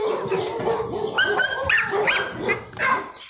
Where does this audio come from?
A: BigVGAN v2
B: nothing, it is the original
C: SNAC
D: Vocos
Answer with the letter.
B